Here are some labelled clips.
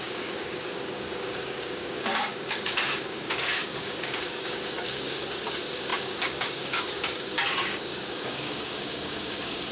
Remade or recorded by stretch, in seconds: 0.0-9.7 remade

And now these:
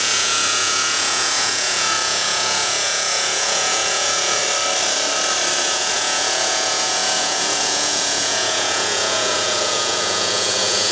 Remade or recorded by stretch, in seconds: 0.0-4.4 remade; 4.4-5.6 recorded; 5.6-10.9 remade